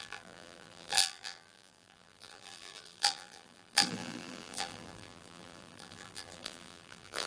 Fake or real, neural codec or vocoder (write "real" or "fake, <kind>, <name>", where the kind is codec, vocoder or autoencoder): fake, vocoder, BigVGAN v2